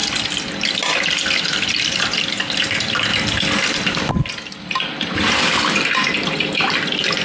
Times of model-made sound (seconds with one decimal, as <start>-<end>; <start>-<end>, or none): none